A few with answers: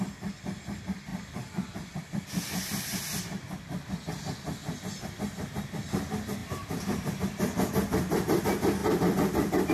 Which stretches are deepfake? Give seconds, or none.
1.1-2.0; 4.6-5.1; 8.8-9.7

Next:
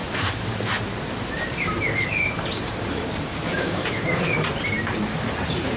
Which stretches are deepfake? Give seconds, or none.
0.0-5.8

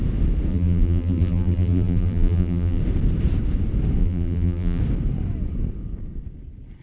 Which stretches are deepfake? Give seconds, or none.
0.5-2.8; 4.0-4.8

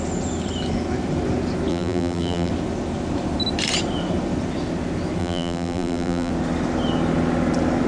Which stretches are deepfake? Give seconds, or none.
1.7-2.5; 5.2-6.3

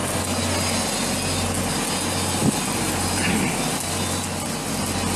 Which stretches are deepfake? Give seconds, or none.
2.4-4.8

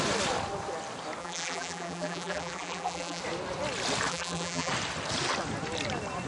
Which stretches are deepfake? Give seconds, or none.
1.2-3.2; 4.1-4.7

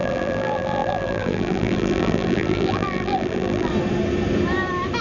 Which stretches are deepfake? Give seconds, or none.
0.0-3.7